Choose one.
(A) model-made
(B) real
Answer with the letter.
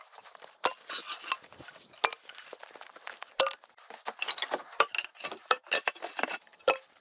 B